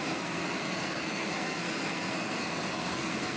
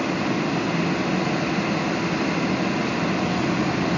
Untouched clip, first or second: second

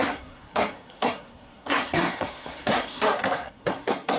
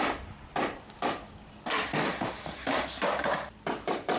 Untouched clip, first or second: second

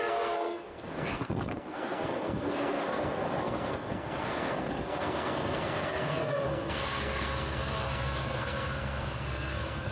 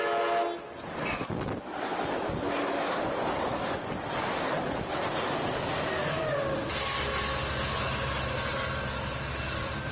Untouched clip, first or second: second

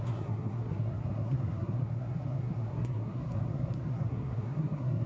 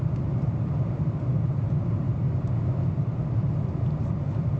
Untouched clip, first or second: second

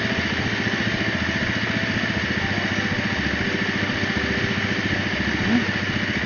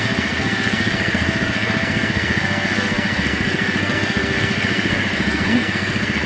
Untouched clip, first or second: first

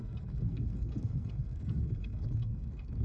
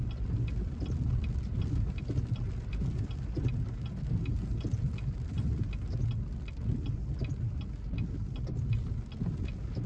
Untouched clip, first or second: second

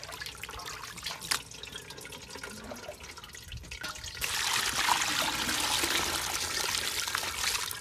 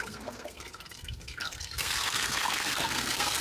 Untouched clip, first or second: first